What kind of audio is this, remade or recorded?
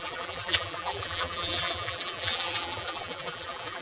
remade